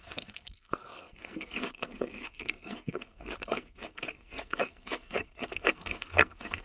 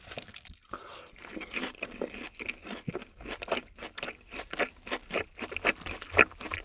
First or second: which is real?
second